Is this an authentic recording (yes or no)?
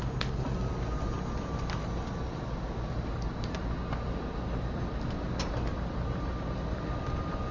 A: yes